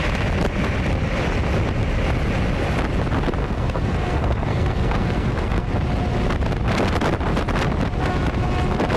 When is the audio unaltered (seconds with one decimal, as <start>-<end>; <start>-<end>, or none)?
0.0-3.4; 5.7-9.0